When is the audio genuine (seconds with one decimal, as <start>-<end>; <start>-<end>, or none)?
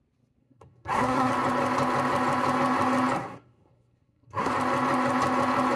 0.0-0.4; 1.3-3.2; 4.5-5.8